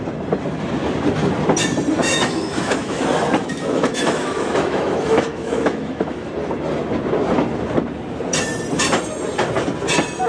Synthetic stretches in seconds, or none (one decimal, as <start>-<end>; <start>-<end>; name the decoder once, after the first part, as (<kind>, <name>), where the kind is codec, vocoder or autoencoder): 2.0-3.0 (autoencoder, DAC-VAE); 3.4-6.3